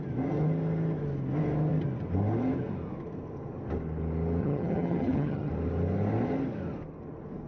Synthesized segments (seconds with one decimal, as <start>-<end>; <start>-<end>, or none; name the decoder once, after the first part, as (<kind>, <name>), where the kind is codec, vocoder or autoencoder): 4.4-5.5 (vocoder, HiFi-GAN)